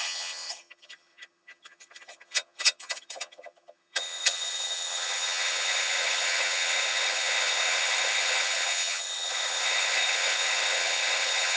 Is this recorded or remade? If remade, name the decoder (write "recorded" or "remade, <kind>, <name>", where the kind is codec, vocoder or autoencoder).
remade, vocoder, HiFi-GAN